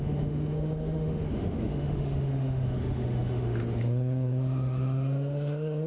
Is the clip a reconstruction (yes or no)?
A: yes